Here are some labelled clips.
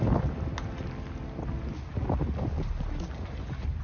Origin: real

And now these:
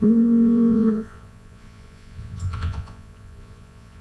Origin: fake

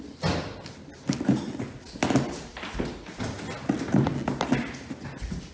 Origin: real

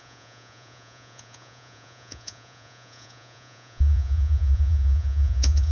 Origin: fake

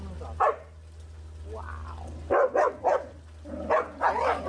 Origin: real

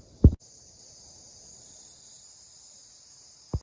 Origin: real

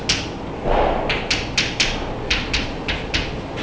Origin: real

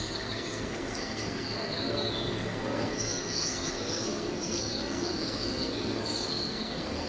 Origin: fake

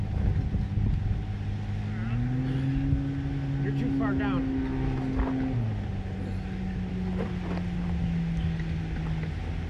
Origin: real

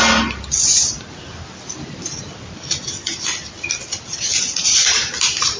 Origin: real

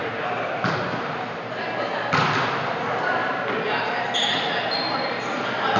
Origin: real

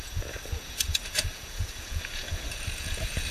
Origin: fake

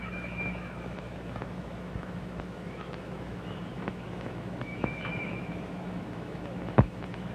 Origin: fake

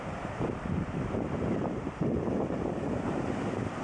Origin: fake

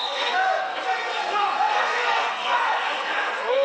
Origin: fake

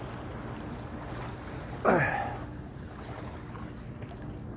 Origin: real